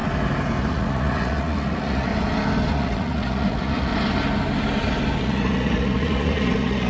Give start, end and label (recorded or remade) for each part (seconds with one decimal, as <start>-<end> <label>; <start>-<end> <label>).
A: 0.0-0.6 recorded; 0.6-2.1 remade; 2.1-2.7 recorded; 2.7-3.9 remade; 3.9-5.2 recorded; 5.2-6.9 remade

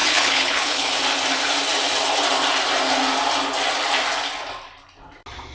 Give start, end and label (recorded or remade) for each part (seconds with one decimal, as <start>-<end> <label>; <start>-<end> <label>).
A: 0.0-0.9 remade; 0.9-5.5 recorded

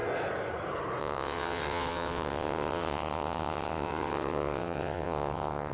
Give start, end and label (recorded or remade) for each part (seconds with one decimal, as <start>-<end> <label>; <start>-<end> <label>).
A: 0.0-1.0 recorded; 1.0-5.7 remade

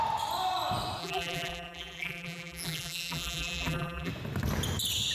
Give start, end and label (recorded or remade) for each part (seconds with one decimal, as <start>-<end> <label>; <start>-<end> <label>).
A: 0.0-1.0 recorded; 1.0-4.1 remade; 4.1-5.1 recorded

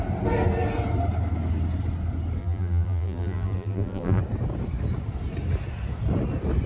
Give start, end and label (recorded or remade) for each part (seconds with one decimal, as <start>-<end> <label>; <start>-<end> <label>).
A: 0.0-2.4 recorded; 2.4-4.2 remade; 4.2-6.7 recorded

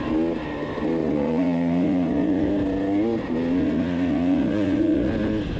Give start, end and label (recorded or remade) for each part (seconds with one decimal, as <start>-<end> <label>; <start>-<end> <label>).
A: 0.0-1.0 recorded; 1.0-2.5 remade; 2.5-3.6 recorded; 3.6-5.1 remade; 5.1-5.6 recorded

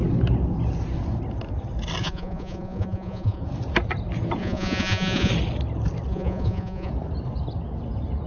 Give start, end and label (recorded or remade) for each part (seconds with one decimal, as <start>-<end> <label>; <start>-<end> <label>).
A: 0.0-2.0 recorded; 2.0-3.4 remade; 3.4-4.4 recorded; 4.4-5.3 remade; 5.3-6.1 recorded; 6.1-6.9 remade; 6.9-8.3 recorded

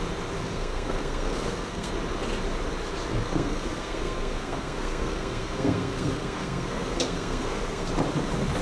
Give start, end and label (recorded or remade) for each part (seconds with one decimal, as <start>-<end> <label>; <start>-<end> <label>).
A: 0.0-0.4 recorded; 0.4-1.9 remade; 1.9-3.1 recorded; 3.1-7.9 remade; 7.9-8.6 recorded